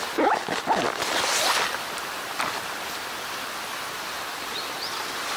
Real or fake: real